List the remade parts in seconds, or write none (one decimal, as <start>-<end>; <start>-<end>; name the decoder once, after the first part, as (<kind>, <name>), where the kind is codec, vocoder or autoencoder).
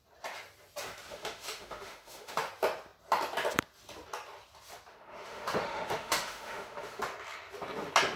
1.1-2.5 (autoencoder, DAC-VAE); 4.9-7.0